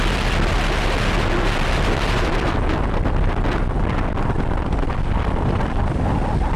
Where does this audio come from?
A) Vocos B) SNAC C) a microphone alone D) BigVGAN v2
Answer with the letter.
C